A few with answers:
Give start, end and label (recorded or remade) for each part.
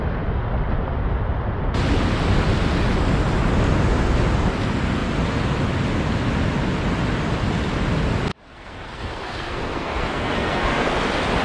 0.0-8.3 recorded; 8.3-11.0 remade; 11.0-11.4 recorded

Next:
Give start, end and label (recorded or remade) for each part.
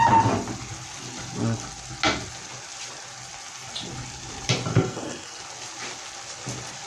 0.0-4.7 recorded; 4.7-5.4 remade; 5.4-6.9 recorded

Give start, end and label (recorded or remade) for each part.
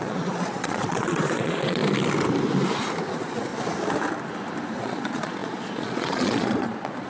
0.0-1.8 remade; 1.8-3.1 recorded; 3.1-3.5 remade; 3.5-4.8 recorded; 4.8-7.1 remade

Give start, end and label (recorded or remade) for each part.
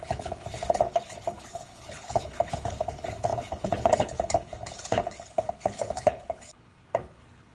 0.0-7.5 remade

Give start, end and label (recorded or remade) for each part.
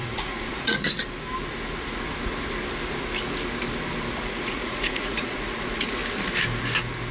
0.0-0.8 remade; 0.8-4.2 recorded; 4.2-6.0 remade; 6.0-7.1 recorded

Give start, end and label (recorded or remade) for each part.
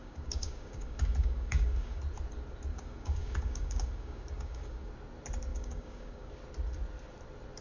0.0-2.0 remade; 2.0-2.7 recorded; 2.7-4.9 remade; 4.9-5.5 recorded; 5.5-6.3 remade; 6.3-7.6 recorded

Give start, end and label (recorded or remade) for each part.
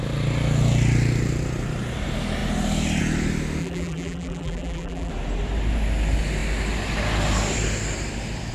0.0-3.6 recorded; 3.6-5.1 remade; 5.1-8.5 recorded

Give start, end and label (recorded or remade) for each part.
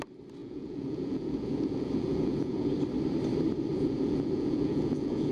0.0-0.4 recorded; 0.4-2.7 remade; 2.7-3.7 recorded; 3.7-5.3 remade